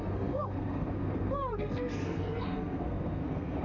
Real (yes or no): no